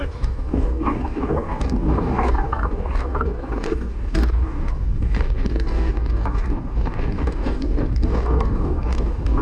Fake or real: fake